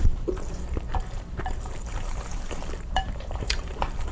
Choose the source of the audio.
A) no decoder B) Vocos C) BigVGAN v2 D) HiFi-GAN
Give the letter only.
C